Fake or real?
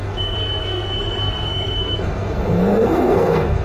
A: fake